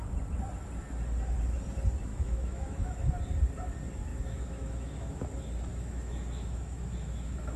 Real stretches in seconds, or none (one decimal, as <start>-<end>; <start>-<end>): 0.0-2.1; 3.1-4.1; 5.3-5.7